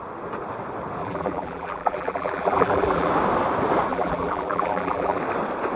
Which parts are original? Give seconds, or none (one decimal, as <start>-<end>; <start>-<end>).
0.0-1.0; 3.1-3.9; 5.2-5.8